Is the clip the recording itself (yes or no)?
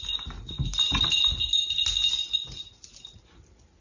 yes